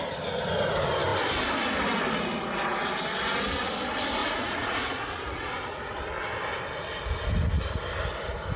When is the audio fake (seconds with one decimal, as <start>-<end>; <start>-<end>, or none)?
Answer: 4.2-6.0